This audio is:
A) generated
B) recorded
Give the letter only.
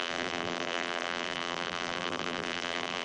A